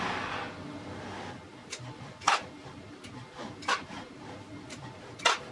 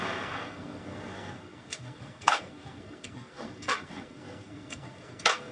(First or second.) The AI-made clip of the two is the second